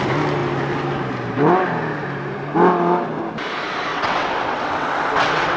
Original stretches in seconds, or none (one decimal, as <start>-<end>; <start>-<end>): 0.0-3.9